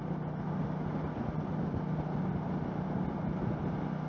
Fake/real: real